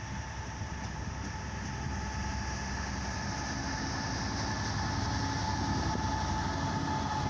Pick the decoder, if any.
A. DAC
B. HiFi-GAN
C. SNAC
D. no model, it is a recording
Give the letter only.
D